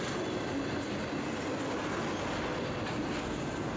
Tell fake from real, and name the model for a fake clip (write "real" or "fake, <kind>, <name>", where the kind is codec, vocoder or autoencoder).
real